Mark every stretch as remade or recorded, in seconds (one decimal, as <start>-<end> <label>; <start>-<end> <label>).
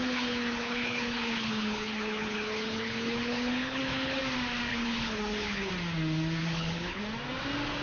0.0-4.2 remade; 4.2-4.7 recorded; 4.7-5.7 remade; 5.7-6.4 recorded; 6.4-7.0 remade; 7.0-7.8 recorded